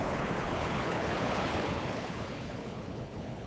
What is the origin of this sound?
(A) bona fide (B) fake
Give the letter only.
B